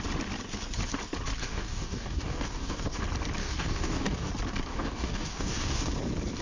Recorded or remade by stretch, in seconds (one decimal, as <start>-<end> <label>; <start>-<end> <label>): 0.0-1.4 recorded; 1.4-3.0 remade; 3.0-3.4 recorded; 3.4-4.3 remade; 4.3-4.7 recorded; 4.7-5.9 remade; 5.9-6.4 recorded